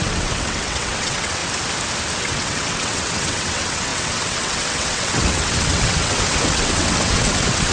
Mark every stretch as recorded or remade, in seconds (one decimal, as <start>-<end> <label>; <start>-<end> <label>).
0.0-1.4 remade; 1.4-2.2 recorded; 2.2-7.7 remade